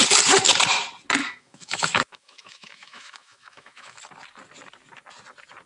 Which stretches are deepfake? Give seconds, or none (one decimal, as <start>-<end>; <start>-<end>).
1.2-4.0